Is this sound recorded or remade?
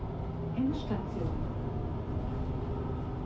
recorded